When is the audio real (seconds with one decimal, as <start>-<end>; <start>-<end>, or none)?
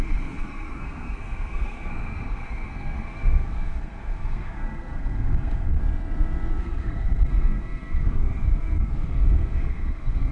5.8-6.6